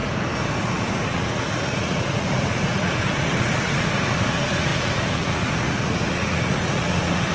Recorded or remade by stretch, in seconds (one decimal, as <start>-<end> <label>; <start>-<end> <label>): 0.0-0.6 recorded; 0.6-7.3 remade